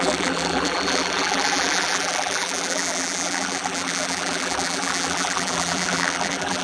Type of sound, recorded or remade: remade